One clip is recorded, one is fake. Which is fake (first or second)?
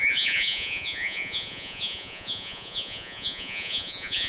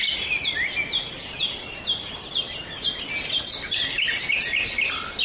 first